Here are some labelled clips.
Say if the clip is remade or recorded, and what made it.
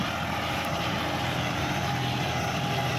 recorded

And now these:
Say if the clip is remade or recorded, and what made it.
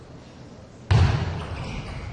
recorded